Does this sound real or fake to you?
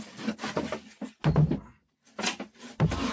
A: real